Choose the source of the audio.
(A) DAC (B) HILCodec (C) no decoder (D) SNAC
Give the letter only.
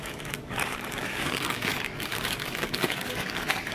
A